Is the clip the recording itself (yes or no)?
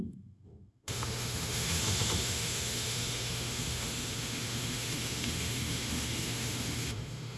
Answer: no